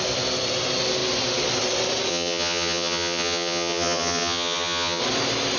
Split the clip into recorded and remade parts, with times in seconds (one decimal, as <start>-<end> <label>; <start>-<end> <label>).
0.0-2.1 recorded; 2.1-5.0 remade; 5.0-5.6 recorded